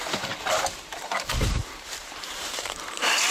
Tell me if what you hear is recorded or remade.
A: remade